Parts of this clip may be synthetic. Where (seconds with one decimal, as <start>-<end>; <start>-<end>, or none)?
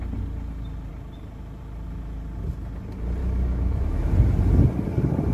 3.2-4.1